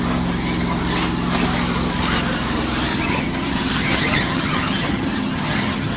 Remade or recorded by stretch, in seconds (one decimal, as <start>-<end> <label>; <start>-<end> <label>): 0.0-2.9 recorded; 2.9-6.0 remade